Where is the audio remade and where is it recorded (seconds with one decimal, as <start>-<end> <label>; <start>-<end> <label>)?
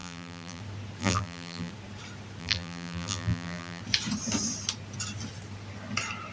0.0-0.6 remade; 0.6-1.0 recorded; 1.0-1.7 remade; 1.7-2.4 recorded; 2.4-3.8 remade; 3.8-6.3 recorded